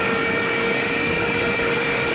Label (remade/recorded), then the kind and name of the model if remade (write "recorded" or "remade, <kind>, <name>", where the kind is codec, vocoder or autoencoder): remade, codec, DAC